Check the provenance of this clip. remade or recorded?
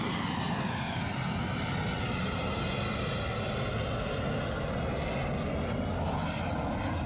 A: recorded